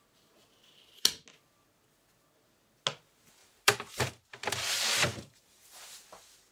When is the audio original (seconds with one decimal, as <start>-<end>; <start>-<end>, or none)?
0.0-3.4; 4.5-5.1; 6.0-6.5